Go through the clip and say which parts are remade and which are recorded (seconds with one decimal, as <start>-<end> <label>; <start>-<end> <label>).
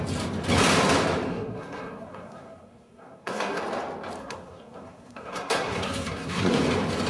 0.0-1.3 recorded; 1.3-3.6 remade; 3.6-4.2 recorded; 4.2-6.6 remade; 6.6-7.1 recorded